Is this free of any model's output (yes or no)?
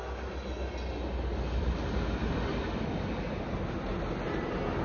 yes